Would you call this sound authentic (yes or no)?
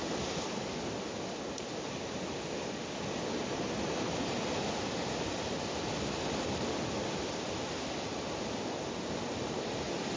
yes